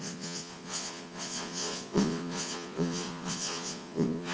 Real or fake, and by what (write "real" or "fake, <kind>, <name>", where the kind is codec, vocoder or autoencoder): fake, vocoder, Vocos